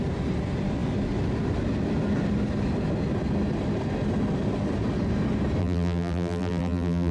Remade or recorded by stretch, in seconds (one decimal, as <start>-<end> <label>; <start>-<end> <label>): 0.0-5.6 recorded; 5.6-7.1 remade